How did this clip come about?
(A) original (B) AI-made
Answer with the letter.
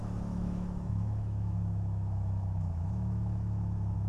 B